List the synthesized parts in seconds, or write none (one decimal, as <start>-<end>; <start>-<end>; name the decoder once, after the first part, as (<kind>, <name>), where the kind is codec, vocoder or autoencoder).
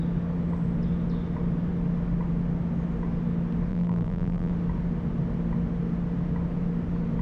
3.7-4.5 (vocoder, BigVGAN v2)